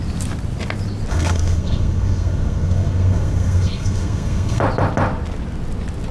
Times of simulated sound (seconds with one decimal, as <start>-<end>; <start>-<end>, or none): 1.1-4.6